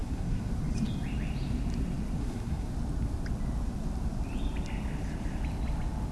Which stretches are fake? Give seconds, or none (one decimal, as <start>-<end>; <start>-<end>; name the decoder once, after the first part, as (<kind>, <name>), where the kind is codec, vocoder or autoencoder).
0.0-0.5 (codec, SNAC); 2.2-2.7